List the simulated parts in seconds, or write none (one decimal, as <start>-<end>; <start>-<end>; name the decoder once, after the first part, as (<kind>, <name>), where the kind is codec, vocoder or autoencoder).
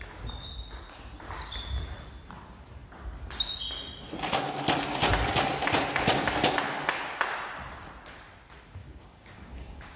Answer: 8.8-10.0 (codec, DAC)